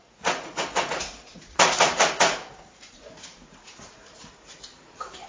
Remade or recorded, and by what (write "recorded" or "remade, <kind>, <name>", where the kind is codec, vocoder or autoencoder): remade, vocoder, Vocos